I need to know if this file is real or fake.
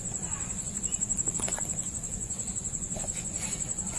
fake